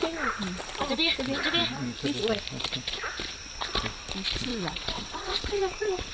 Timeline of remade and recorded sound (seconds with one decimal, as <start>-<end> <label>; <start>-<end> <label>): 0.0-4.5 recorded; 4.5-6.1 remade